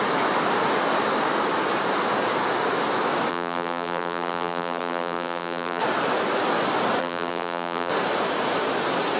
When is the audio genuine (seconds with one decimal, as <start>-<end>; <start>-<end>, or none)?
0.0-3.3; 5.8-7.0; 7.9-9.2